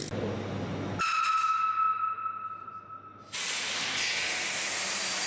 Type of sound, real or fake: real